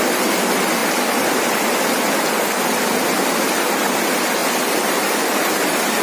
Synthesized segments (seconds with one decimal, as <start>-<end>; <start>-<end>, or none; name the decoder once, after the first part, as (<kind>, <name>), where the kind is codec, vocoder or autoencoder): none